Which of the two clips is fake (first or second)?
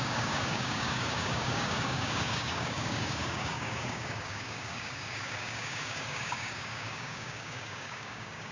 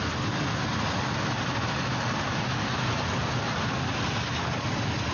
first